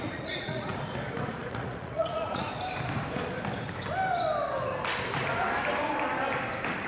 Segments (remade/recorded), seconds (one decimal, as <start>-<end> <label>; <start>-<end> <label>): 0.0-0.7 remade; 0.7-1.2 recorded; 1.2-2.5 remade; 2.5-6.9 recorded